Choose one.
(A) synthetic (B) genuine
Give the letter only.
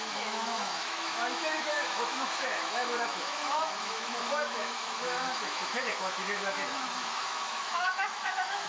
A